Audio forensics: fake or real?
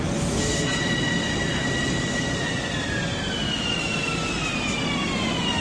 real